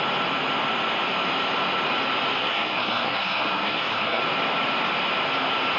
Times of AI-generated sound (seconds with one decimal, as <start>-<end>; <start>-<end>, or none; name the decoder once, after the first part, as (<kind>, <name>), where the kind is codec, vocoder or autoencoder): 2.4-4.2 (codec, SNAC)